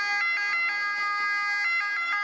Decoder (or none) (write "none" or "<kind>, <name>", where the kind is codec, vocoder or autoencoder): none